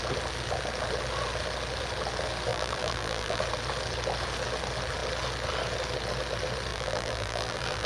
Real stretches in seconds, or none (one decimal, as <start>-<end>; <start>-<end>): 0.0-2.5; 3.4-6.7